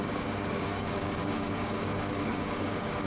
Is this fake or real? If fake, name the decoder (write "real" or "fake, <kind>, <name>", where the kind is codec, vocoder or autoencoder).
fake, codec, DAC